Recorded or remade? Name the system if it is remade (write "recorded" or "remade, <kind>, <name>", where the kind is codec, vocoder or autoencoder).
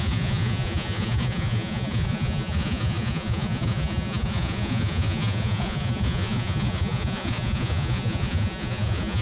remade, vocoder, Vocos